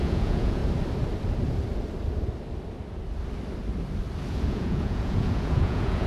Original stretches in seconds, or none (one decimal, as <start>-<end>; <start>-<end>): 0.6-4.3